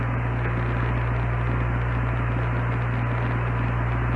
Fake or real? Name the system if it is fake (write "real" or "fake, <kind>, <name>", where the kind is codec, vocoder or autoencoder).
real